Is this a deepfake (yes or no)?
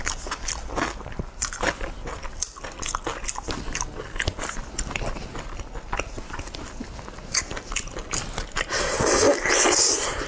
no